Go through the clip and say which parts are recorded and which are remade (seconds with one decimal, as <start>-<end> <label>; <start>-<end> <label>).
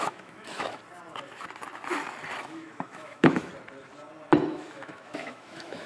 0.0-0.8 remade; 0.8-2.4 recorded; 2.4-3.5 remade; 3.5-4.5 recorded; 4.5-5.9 remade